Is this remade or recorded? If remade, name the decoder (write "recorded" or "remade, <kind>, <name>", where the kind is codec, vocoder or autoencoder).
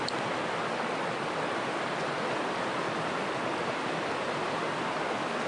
recorded